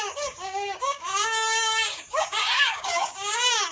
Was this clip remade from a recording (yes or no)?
yes